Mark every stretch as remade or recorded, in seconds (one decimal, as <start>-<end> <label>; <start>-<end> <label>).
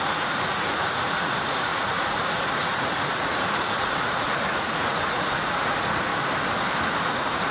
0.0-6.1 remade; 6.1-6.8 recorded; 6.8-7.5 remade